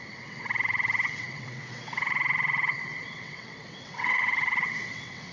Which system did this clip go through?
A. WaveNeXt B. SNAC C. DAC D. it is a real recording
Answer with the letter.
A